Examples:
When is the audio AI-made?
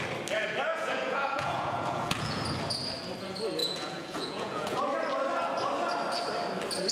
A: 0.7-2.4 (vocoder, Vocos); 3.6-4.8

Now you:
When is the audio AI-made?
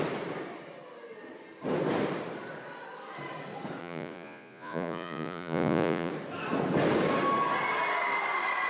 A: 3.8-6.1 (vocoder, Vocos)